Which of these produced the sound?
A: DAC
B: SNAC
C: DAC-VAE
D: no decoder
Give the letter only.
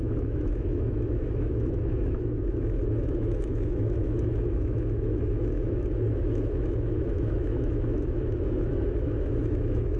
C